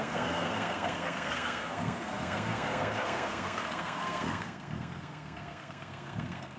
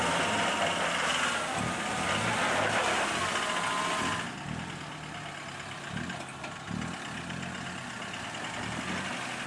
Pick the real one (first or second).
second